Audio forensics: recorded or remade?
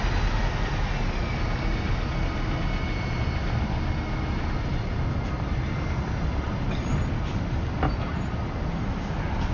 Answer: recorded